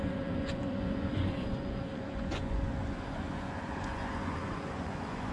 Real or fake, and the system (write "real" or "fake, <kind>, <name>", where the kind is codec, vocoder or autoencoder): fake, vocoder, Vocos